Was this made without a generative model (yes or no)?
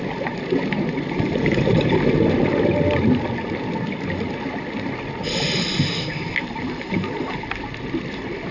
yes